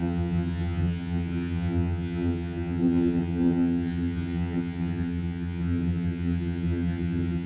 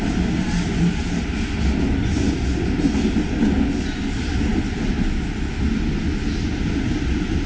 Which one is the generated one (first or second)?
first